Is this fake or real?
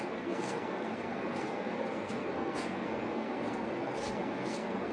fake